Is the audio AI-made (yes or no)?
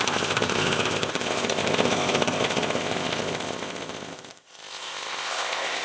yes